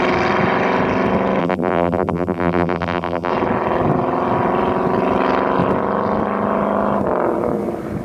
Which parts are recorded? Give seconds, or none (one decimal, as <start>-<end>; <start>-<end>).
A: 0.0-1.4; 3.3-8.0